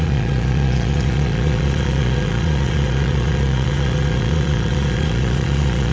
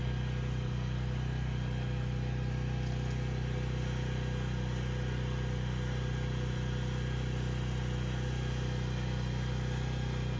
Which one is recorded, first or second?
second